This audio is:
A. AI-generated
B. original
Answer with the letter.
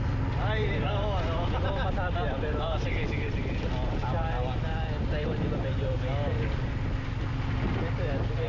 B